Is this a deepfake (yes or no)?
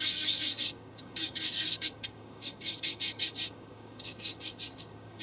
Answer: yes